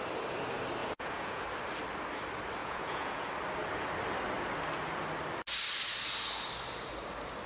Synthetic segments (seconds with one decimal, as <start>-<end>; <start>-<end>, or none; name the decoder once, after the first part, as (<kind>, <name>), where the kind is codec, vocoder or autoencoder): 0.8-1.4 (vocoder, Vocos); 2.6-3.3